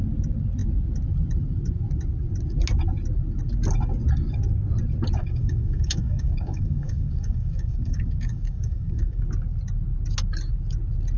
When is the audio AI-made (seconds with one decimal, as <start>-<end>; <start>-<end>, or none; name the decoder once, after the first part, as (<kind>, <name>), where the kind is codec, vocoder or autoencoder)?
5.2-9.2 (codec, DAC)